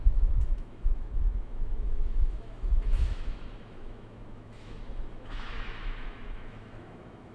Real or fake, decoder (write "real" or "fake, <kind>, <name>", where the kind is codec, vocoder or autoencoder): fake, autoencoder, DAC-VAE